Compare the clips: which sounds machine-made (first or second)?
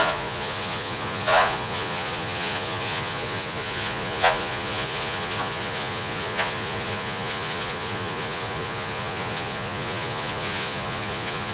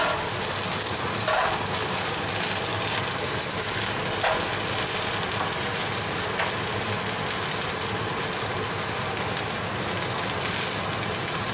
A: first